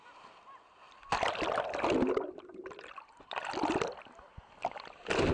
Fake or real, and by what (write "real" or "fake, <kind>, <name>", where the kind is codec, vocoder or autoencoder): real